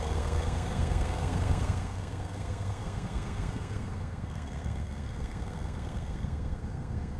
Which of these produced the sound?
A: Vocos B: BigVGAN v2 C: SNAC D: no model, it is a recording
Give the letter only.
C